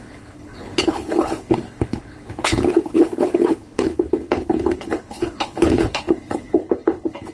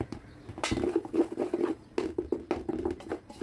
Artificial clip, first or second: first